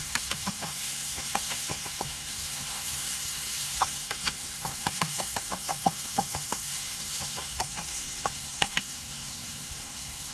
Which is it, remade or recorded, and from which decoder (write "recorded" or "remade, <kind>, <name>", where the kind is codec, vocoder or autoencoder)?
remade, codec, SNAC